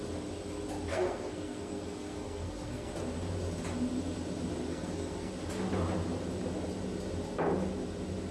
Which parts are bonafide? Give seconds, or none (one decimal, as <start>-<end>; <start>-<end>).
0.0-0.9; 2.9-4.7; 5.3-8.3